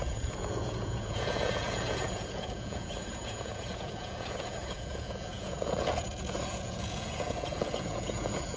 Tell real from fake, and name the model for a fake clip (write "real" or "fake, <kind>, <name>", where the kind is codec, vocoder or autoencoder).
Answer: fake, vocoder, Vocos